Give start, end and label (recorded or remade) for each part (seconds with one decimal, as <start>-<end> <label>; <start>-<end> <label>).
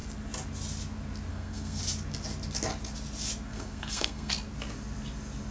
0.0-1.3 recorded; 1.3-1.8 remade; 1.8-3.5 recorded; 3.5-4.3 remade; 4.3-5.5 recorded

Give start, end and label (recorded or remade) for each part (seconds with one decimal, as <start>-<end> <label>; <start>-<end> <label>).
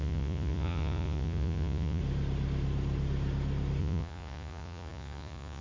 0.0-2.0 remade; 2.0-3.8 recorded; 3.8-5.6 remade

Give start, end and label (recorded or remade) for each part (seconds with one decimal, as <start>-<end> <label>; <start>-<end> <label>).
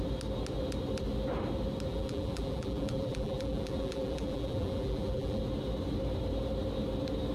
0.0-1.9 recorded; 1.9-5.4 remade; 5.4-7.3 recorded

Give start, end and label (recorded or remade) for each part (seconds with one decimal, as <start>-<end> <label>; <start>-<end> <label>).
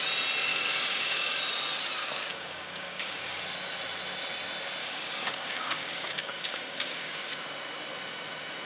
0.0-0.5 recorded; 0.5-1.4 remade; 1.4-2.0 recorded; 2.0-3.4 remade; 3.4-4.8 recorded; 4.8-7.3 remade; 7.3-8.6 recorded